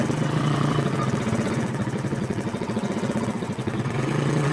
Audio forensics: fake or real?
fake